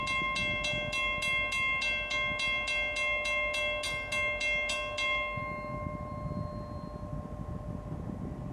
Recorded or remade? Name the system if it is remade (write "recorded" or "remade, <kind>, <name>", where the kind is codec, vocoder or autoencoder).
recorded